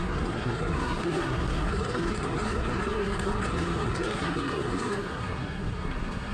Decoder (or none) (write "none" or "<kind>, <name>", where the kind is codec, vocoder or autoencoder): codec, SNAC